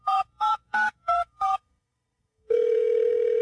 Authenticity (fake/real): fake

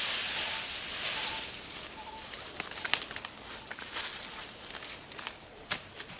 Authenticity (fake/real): real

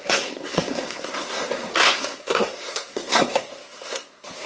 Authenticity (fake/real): fake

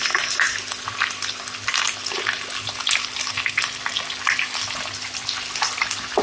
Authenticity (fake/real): real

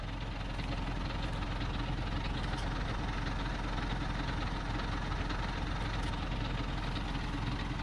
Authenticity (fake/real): real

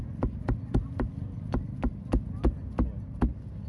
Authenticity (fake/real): real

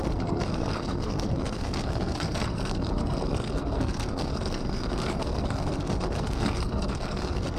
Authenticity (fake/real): fake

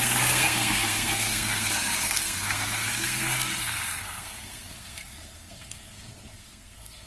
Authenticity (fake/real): fake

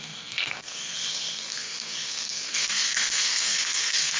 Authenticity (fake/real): fake